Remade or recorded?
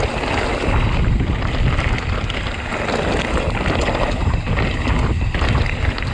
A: recorded